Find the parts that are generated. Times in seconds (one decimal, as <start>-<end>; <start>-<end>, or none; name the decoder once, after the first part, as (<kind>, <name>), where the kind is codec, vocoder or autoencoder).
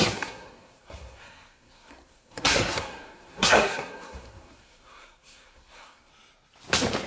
0.0-6.1 (codec, SNAC)